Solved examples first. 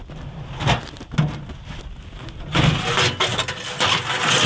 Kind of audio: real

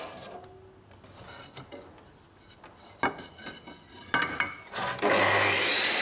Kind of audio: real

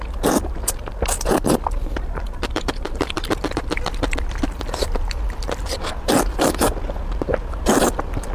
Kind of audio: fake